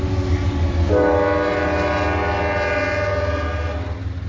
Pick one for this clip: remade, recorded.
recorded